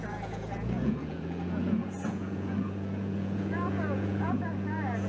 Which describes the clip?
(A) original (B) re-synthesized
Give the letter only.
B